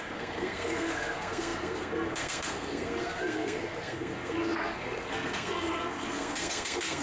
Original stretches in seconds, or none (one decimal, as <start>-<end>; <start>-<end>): none